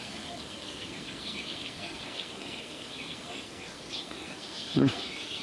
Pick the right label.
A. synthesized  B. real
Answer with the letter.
A